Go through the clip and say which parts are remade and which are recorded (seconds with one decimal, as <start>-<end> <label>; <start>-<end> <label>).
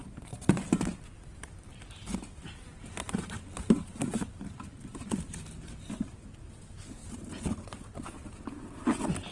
0.0-9.3 recorded